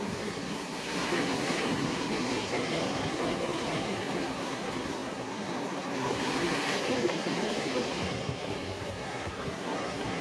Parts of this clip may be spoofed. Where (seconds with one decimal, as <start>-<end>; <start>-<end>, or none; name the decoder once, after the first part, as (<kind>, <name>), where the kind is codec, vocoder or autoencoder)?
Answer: 0.0-10.2 (codec, SNAC)